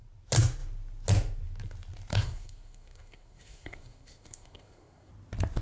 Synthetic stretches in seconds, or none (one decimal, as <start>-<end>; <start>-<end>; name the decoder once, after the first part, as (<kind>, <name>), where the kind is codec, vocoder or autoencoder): 2.1-5.1 (codec, SNAC)